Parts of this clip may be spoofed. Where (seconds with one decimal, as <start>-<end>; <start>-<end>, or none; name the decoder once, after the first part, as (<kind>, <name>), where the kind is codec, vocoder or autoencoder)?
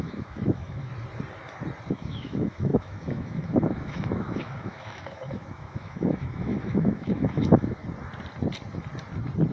0.0-0.9 (autoencoder, DAC-VAE); 1.9-7.8